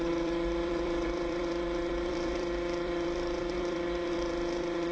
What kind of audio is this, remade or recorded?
remade